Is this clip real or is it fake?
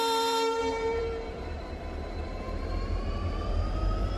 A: fake